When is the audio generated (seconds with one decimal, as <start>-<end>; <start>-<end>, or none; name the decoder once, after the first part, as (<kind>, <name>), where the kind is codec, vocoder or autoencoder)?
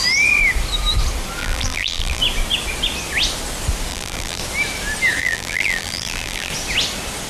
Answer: 1.4-2.2 (vocoder, BigVGAN v2); 3.9-4.4; 5.2-6.5